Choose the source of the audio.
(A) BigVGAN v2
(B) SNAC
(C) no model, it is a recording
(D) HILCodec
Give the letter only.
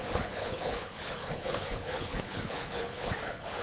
D